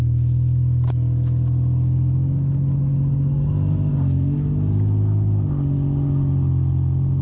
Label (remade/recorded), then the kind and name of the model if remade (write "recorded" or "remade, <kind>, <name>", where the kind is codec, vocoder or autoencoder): recorded